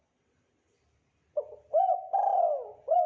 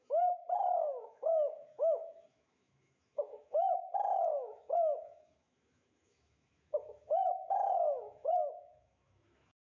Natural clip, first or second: first